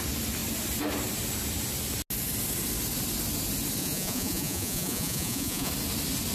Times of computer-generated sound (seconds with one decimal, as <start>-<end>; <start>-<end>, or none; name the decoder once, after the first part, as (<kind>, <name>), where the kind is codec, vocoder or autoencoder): 3.8-5.7 (vocoder, Vocos)

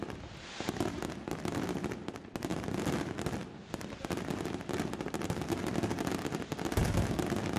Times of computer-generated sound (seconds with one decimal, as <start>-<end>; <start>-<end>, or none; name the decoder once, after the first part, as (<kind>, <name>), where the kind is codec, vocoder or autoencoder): none

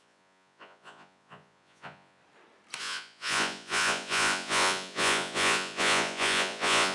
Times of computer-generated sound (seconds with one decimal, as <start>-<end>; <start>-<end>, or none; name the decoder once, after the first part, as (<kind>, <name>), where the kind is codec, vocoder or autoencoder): 0.0-2.2 (vocoder, Vocos); 2.8-6.9

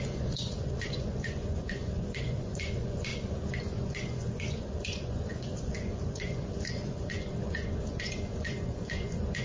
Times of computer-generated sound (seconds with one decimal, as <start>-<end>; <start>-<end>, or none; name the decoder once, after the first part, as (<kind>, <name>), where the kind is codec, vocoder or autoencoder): 0.0-3.1 (vocoder, Vocos); 3.6-9.4

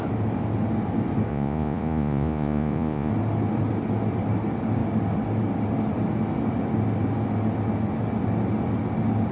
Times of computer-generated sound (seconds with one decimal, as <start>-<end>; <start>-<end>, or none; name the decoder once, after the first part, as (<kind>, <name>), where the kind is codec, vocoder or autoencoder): 1.3-3.1 (vocoder, Vocos)